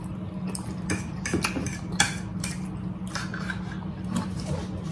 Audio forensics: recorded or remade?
recorded